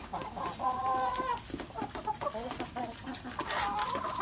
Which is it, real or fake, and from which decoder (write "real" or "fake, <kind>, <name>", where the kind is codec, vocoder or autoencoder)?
real